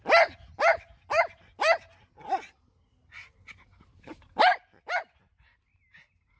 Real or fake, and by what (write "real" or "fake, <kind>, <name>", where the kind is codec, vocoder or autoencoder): real